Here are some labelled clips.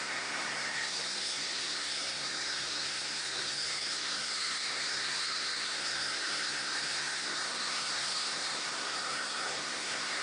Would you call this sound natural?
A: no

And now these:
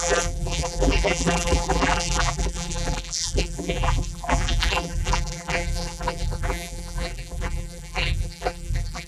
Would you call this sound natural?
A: no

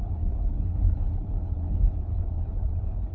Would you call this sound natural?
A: no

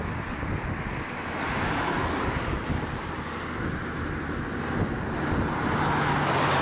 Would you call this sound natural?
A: yes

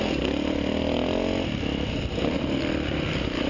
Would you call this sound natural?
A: yes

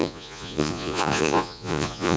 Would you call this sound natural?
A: no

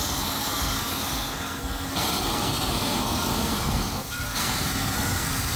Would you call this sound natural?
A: no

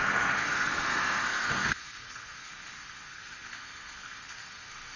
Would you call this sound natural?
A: no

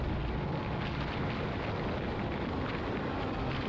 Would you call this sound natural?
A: yes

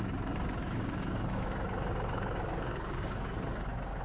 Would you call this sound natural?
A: no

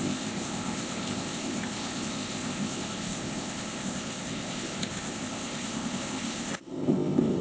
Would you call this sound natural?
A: no